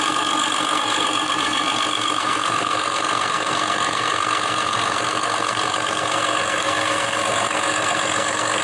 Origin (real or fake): fake